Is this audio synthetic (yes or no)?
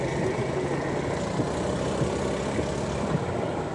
no